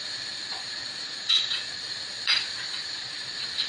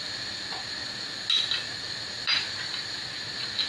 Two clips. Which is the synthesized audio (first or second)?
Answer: first